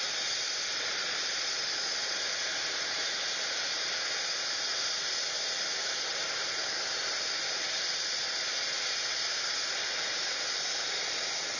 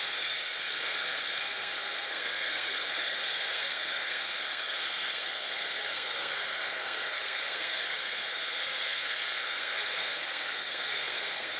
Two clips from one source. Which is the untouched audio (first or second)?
first